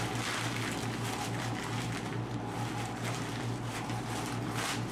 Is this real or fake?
real